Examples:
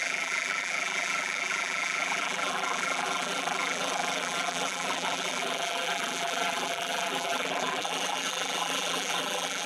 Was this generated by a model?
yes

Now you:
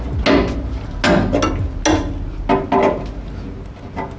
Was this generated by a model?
no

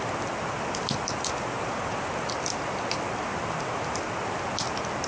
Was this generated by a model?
no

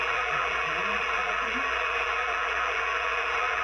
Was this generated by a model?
yes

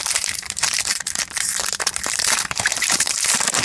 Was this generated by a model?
yes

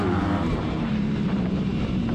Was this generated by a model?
yes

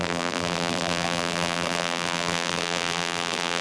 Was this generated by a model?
yes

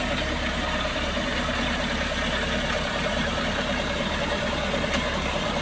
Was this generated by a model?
yes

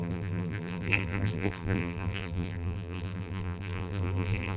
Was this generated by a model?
yes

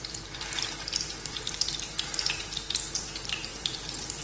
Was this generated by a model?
yes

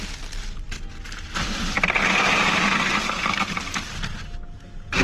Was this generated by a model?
no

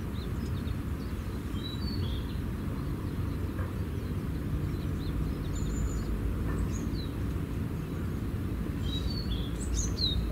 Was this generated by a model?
yes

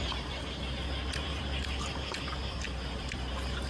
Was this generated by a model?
yes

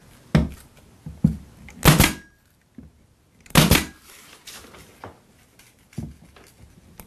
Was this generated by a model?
no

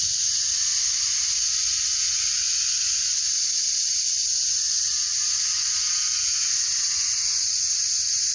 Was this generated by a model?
no